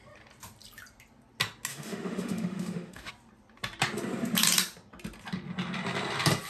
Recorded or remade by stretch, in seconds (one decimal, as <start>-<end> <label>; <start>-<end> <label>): 0.0-1.7 recorded; 1.7-3.1 remade; 3.1-6.5 recorded

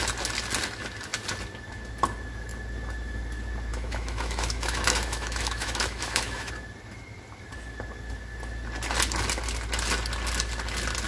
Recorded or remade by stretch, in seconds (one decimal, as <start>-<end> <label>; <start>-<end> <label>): 0.0-3.7 recorded; 3.7-6.5 remade; 6.5-11.1 recorded

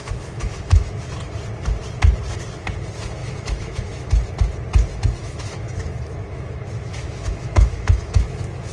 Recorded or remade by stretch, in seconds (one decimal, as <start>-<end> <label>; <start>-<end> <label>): 0.0-0.9 remade; 0.9-3.2 recorded; 3.2-4.1 remade; 4.1-5.2 recorded; 5.2-8.7 remade

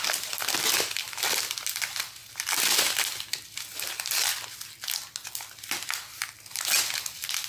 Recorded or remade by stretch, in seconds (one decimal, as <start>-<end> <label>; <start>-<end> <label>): 0.0-7.5 recorded

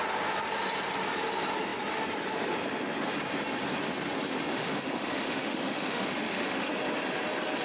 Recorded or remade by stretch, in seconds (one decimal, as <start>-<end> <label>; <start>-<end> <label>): 0.0-4.5 recorded; 4.5-6.7 remade; 6.7-7.6 recorded

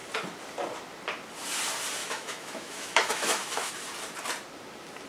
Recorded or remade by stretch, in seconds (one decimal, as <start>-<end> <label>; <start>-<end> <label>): 0.0-2.0 recorded; 2.0-3.7 remade; 3.7-5.1 recorded